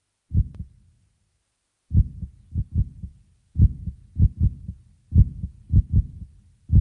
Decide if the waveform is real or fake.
real